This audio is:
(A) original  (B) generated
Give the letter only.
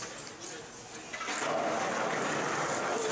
A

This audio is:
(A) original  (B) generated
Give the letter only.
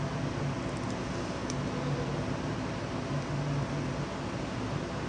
A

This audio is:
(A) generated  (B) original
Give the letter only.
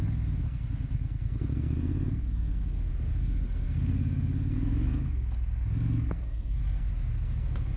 A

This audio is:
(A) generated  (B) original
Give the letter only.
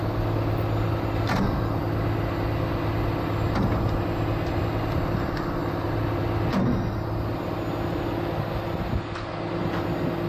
B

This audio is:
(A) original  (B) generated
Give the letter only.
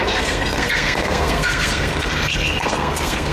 B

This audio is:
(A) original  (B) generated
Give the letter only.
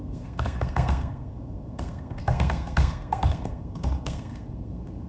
B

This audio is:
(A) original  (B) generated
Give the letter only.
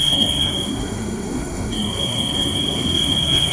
B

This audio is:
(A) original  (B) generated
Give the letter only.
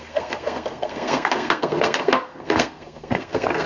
B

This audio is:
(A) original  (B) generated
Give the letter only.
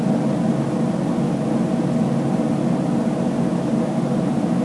A